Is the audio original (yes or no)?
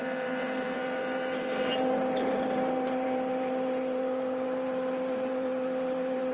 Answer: no